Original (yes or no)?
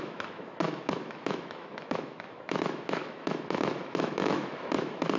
no